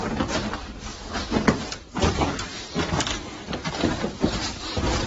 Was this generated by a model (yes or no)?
yes